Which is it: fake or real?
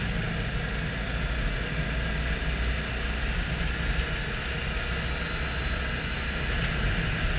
real